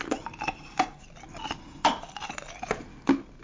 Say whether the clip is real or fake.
real